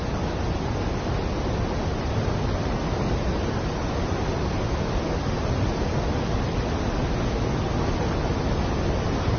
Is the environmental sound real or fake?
real